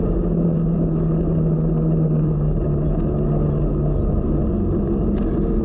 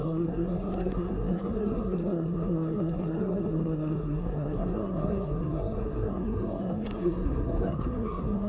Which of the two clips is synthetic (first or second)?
second